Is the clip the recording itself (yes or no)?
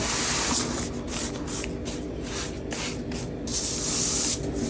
yes